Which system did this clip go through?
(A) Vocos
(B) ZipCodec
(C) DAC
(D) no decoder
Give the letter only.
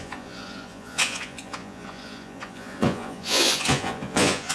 A